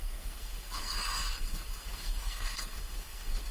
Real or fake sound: fake